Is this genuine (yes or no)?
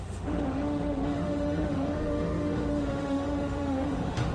no